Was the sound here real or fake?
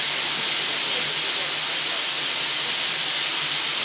real